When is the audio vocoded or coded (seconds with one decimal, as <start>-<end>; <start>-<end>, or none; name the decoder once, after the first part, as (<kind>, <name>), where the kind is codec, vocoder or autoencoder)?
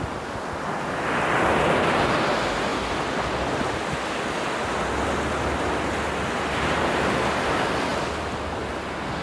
7.9-8.7 (vocoder, BigVGAN v2)